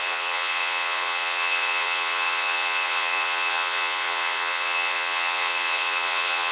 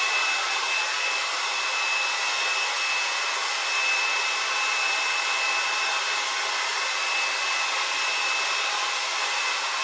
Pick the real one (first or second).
second